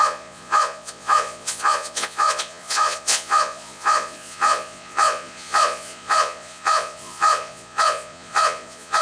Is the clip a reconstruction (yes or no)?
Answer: yes